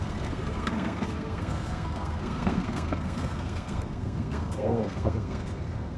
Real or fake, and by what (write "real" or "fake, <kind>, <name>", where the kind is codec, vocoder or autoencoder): fake, codec, SNAC